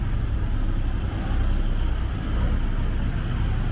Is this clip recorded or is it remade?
recorded